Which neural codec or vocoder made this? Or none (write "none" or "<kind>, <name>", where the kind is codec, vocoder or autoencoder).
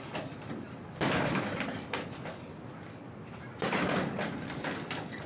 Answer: vocoder, BigVGAN v2